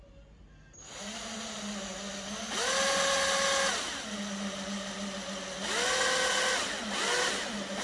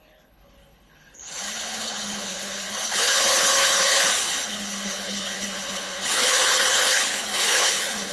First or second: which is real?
first